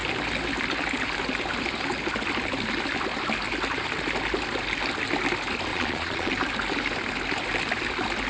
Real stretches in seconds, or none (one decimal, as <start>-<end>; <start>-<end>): 0.0-5.7; 6.3-8.3